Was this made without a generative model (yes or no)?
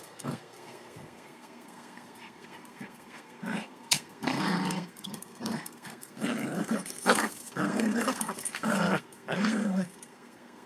no